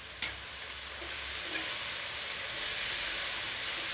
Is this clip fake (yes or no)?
no